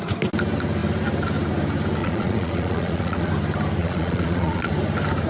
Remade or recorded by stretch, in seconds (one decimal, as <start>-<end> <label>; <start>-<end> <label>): 0.0-2.0 recorded; 2.0-3.3 remade; 3.3-3.8 recorded; 3.8-4.7 remade; 4.7-5.3 recorded